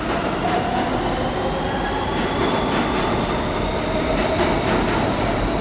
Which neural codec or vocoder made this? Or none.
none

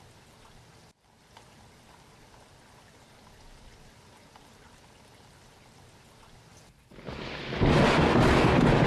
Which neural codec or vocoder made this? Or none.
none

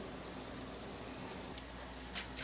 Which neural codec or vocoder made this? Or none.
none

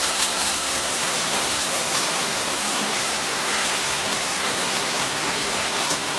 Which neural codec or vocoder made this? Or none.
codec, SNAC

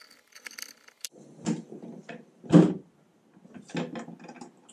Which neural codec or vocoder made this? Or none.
none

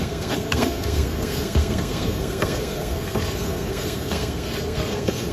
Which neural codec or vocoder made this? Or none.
codec, SNAC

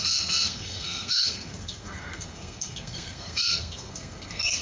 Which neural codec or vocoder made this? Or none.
codec, SNAC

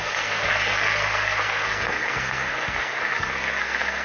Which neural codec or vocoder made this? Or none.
codec, SNAC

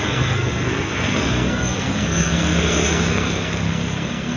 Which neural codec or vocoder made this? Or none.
codec, SNAC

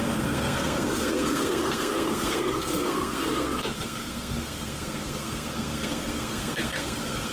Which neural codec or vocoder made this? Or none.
codec, SNAC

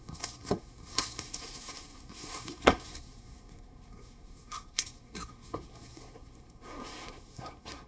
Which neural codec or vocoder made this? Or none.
codec, SNAC